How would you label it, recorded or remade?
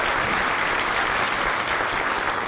recorded